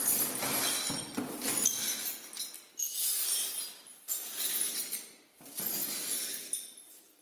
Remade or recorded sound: recorded